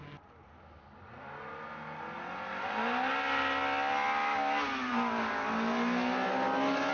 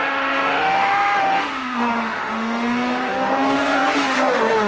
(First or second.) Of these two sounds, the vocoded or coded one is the second